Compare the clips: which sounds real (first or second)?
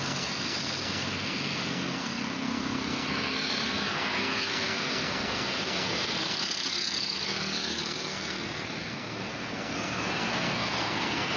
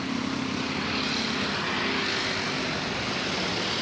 second